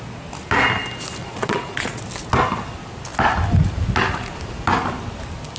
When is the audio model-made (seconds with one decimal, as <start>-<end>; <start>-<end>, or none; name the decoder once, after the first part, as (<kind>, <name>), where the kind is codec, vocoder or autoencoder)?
1.2-2.0 (vocoder, Vocos)